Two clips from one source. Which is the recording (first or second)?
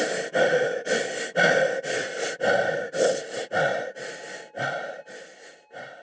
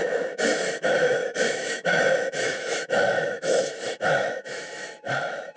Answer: first